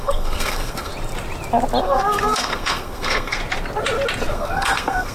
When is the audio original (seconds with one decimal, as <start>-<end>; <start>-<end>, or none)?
0.9-1.8; 3.4-4.3